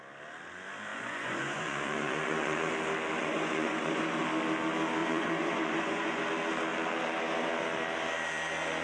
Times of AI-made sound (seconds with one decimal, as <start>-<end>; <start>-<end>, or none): 0.9-2.7; 3.2-4.2; 5.0-6.2

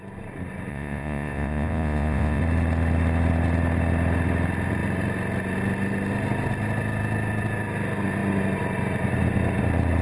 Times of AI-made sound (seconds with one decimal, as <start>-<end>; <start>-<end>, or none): 0.7-2.4

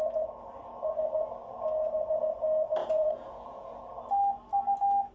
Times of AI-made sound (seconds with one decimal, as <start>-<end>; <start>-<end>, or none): 2.8-3.8

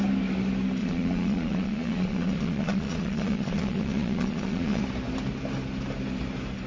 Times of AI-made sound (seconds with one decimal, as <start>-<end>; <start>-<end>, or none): 0.8-4.8

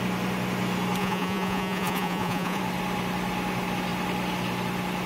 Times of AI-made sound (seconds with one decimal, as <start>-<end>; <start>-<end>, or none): 1.0-2.6

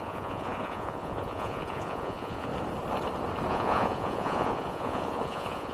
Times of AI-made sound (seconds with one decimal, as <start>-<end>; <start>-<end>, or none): 0.0-2.5; 3.5-5.7